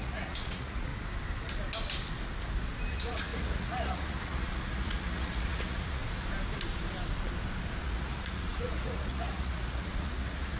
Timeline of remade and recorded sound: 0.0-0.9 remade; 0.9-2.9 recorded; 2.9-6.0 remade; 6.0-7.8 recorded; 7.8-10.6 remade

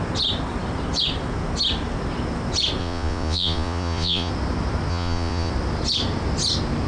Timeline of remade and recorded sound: 0.0-2.8 recorded; 2.8-4.3 remade; 4.3-4.9 recorded; 4.9-5.5 remade; 5.5-6.9 recorded

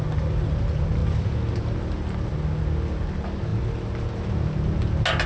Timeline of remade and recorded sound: 0.0-5.3 recorded

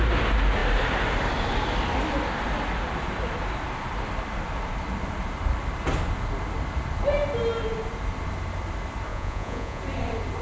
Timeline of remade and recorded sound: 0.0-9.1 recorded; 9.1-9.8 remade; 9.8-10.4 recorded

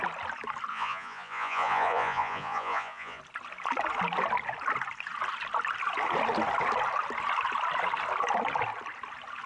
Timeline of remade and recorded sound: 0.0-0.7 recorded; 0.7-3.2 remade; 3.2-9.5 recorded

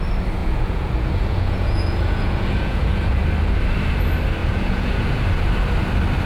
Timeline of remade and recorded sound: 0.0-0.4 recorded; 0.4-3.2 remade; 3.2-4.4 recorded; 4.4-5.3 remade; 5.3-6.2 recorded

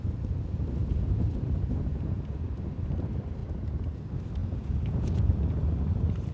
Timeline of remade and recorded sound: 0.0-0.8 recorded; 0.8-2.5 remade; 2.5-3.4 recorded; 3.4-4.0 remade; 4.0-4.4 recorded; 4.4-5.2 remade; 5.2-6.3 recorded

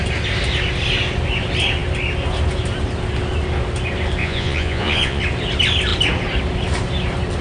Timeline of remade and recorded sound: 0.0-4.2 recorded; 4.2-5.2 remade; 5.2-7.4 recorded